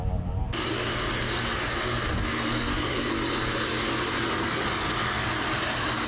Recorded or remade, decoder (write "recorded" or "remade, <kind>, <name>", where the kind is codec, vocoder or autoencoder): recorded